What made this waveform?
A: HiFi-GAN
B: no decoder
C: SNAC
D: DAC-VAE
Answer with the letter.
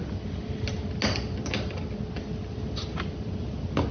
B